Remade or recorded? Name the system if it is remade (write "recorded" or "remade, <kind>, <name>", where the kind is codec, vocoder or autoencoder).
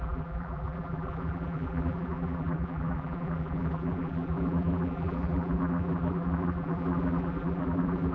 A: remade, vocoder, BigVGAN v2